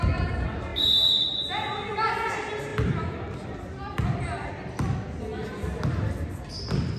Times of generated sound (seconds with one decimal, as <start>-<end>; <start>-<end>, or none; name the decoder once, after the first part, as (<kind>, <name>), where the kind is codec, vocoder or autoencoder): none